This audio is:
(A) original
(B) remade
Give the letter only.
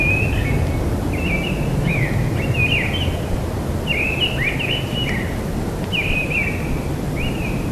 A